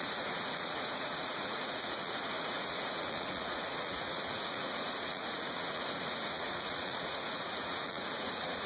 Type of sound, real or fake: fake